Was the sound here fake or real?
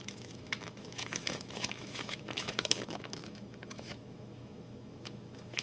fake